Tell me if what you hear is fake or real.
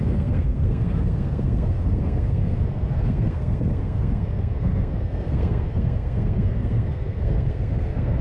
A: fake